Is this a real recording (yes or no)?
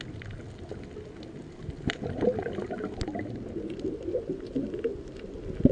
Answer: yes